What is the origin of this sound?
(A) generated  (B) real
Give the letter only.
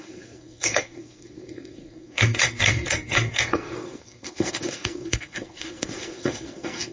A